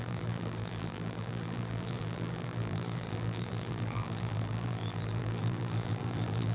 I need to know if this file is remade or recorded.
remade